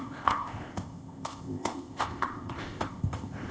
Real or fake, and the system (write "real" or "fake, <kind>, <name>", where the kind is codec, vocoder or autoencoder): fake, codec, ZipCodec